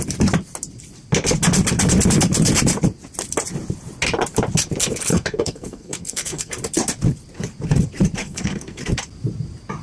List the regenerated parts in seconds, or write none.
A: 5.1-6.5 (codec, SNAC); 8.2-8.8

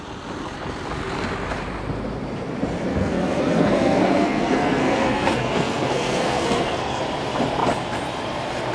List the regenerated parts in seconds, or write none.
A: 2.9-7.0 (codec, SNAC)

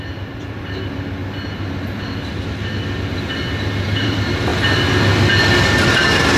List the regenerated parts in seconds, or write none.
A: 0.0-1.2 (vocoder, BigVGAN v2); 2.3-4.5

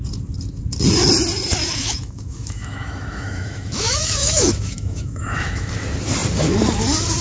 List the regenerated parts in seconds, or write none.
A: 1.7-5.7 (autoencoder, DAC-VAE)